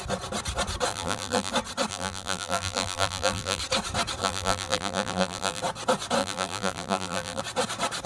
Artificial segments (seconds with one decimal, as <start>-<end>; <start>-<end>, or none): 0.9-1.5; 1.9-3.6; 4.2-5.6; 6.2-7.4